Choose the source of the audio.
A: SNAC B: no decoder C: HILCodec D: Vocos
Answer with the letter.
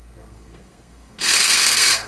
A